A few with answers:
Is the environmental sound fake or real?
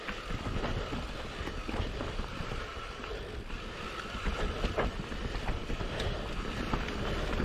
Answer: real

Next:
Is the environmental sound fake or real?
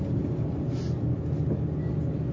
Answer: real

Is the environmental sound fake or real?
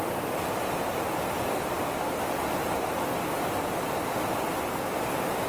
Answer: real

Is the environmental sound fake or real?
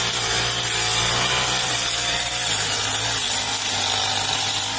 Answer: real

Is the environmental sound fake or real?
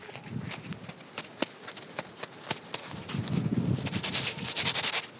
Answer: real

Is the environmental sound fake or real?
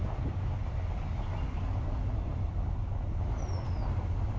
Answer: real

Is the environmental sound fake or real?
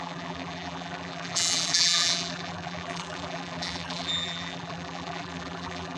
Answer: fake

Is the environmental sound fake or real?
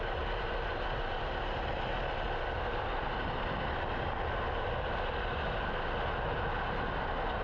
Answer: real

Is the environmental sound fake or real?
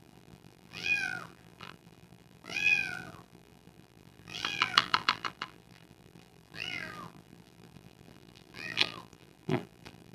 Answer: fake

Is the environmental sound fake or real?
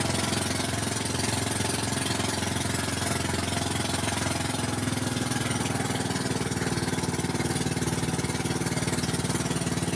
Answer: real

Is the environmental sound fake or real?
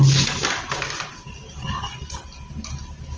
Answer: real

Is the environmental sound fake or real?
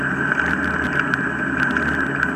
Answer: real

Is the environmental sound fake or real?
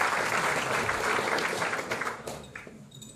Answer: real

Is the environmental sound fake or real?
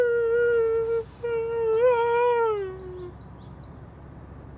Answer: real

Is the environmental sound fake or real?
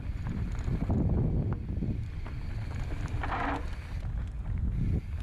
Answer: real